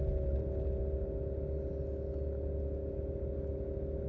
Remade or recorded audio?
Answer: recorded